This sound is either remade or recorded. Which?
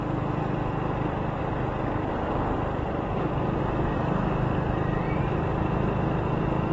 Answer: recorded